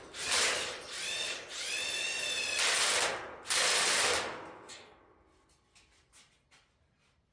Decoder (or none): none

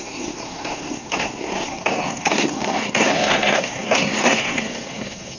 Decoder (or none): codec, SNAC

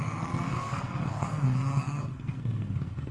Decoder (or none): codec, SNAC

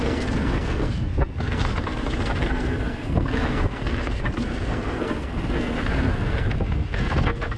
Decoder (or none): codec, SNAC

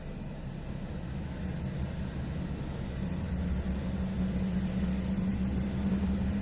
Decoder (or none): none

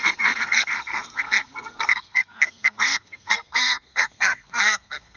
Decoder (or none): codec, SNAC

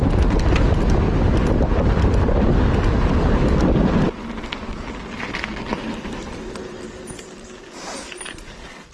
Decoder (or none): none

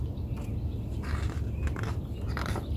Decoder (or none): none